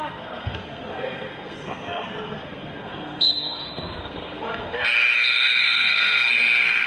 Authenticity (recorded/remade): remade